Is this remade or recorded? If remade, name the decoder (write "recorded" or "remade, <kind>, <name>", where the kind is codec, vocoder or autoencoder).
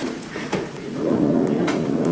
remade, vocoder, Vocos